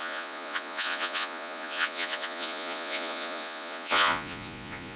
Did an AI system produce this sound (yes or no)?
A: yes